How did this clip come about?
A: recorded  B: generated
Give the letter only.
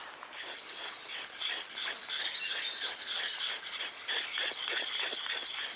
A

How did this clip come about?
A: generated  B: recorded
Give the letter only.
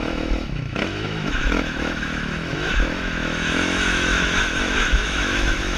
A